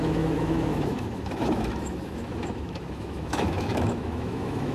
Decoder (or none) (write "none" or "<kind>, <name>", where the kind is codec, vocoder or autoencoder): autoencoder, DAC-VAE